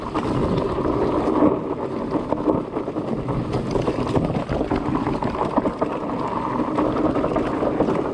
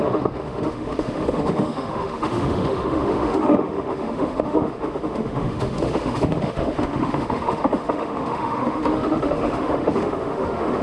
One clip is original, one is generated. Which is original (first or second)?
first